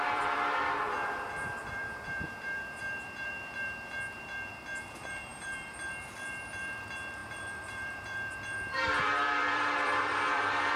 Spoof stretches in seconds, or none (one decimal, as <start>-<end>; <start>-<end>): 0.0-10.8

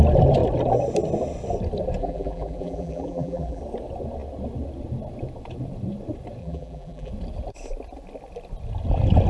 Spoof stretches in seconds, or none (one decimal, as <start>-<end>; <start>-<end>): 2.0-3.6; 6.4-7.1

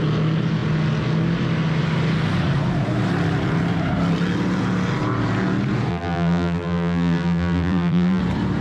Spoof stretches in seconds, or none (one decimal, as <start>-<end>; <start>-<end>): 5.9-8.2

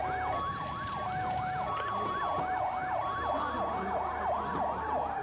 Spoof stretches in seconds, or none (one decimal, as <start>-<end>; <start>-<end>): none

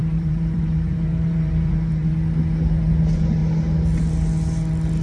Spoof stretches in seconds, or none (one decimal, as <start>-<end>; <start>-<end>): 0.0-2.1